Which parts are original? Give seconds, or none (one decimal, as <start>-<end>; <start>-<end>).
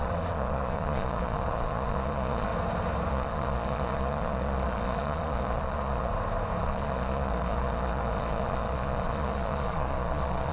2.5-3.1; 6.1-6.6